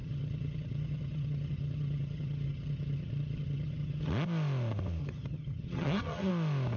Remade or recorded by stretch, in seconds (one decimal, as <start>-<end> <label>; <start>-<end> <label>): 0.0-4.1 remade; 4.1-5.0 recorded; 5.0-6.3 remade; 6.3-6.8 recorded